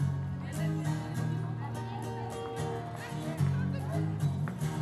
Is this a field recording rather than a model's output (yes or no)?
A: yes